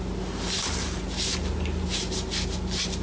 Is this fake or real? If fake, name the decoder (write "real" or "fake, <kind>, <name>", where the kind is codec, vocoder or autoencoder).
real